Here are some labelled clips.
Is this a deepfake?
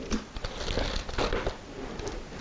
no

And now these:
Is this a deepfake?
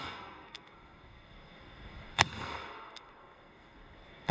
yes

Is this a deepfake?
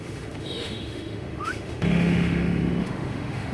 yes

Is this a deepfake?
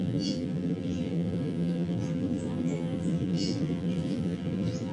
yes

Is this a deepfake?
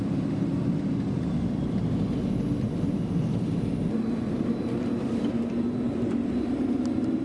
yes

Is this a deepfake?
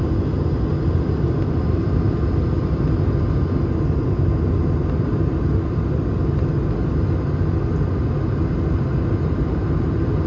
no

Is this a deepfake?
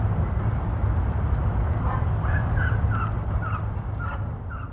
no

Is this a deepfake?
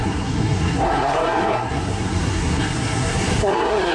yes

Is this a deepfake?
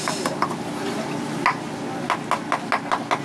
no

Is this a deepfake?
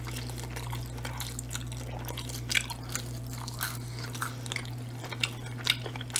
no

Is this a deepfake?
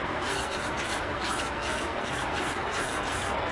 yes